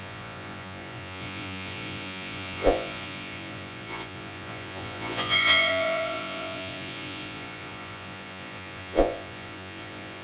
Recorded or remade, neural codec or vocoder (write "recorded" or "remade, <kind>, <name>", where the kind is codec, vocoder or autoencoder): remade, vocoder, Vocos